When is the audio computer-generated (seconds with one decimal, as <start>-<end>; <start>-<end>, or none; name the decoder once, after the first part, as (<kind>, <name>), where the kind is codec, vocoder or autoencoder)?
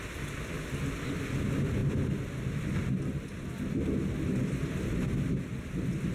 none